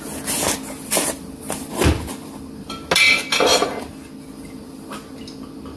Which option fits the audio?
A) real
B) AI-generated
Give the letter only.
A